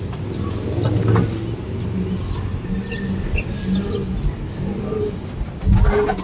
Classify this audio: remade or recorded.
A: recorded